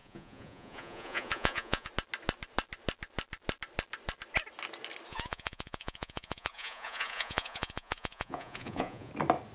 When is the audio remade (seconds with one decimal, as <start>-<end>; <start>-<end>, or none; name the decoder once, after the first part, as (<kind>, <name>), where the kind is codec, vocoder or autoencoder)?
0.0-1.9 (vocoder, Vocos); 5.1-9.1